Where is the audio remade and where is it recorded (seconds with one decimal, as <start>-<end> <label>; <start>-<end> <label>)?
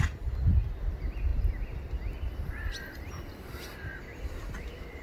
0.0-5.0 recorded